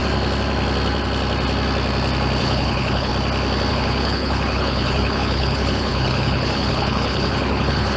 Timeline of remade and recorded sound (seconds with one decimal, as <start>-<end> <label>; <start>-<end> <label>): 0.0-2.4 recorded; 2.4-3.1 remade; 3.1-3.7 recorded; 3.7-8.0 remade